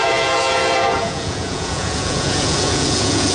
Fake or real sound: fake